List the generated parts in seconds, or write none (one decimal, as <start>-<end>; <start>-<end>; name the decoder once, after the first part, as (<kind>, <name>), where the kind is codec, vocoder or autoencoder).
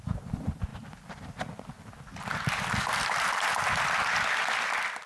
none